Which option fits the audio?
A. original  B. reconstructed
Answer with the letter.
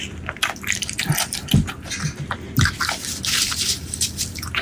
A